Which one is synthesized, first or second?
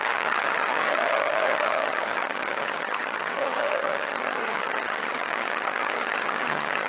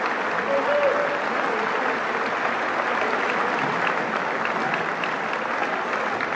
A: first